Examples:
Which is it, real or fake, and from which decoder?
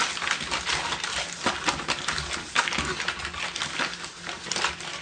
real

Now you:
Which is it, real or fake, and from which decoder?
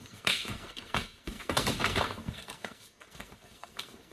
fake, codec, SNAC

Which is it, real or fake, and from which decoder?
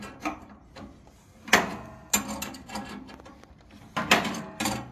real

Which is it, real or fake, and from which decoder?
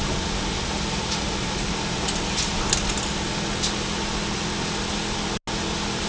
real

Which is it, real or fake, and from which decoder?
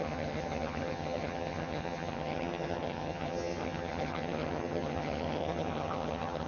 fake, vocoder, HiFi-GAN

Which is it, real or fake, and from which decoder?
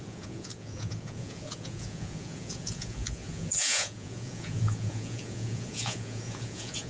fake, vocoder, Vocos